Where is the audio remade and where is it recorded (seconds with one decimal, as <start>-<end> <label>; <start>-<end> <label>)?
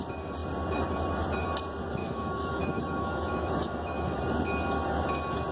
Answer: 0.0-2.0 recorded; 2.0-4.2 remade; 4.2-5.5 recorded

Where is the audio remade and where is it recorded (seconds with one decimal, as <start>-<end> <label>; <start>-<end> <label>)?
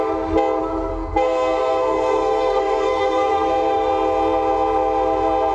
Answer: 0.0-0.6 recorded; 0.6-3.9 remade; 3.9-5.5 recorded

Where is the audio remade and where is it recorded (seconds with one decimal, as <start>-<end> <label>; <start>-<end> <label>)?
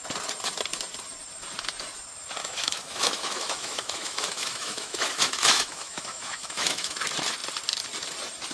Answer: 0.0-2.4 recorded; 2.4-7.0 remade; 7.0-8.5 recorded